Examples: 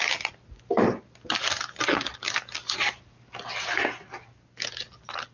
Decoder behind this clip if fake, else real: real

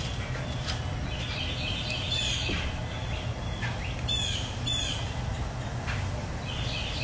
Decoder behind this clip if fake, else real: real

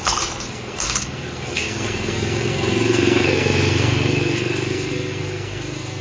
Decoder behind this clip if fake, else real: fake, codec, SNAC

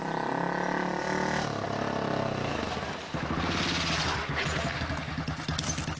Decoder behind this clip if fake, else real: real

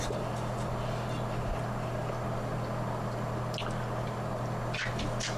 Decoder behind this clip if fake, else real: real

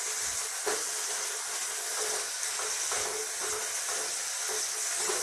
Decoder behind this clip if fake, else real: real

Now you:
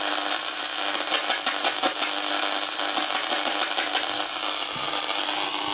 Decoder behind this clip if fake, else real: real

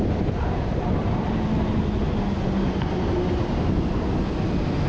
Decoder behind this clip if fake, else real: real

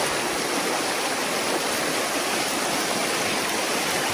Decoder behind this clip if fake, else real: real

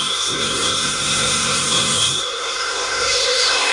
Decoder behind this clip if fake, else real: fake, codec, SNAC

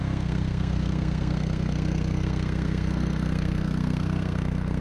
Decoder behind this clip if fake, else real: fake, codec, SNAC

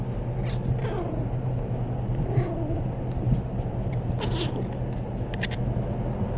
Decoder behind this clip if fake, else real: real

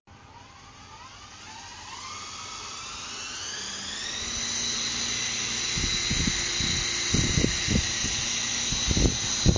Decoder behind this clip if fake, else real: real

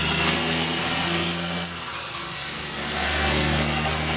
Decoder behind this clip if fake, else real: fake, codec, SNAC